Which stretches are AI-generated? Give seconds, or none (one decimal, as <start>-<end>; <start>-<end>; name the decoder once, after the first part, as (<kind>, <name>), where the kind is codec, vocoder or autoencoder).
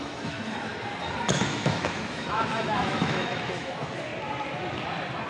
0.0-0.7 (autoencoder, DAC-VAE); 1.3-4.1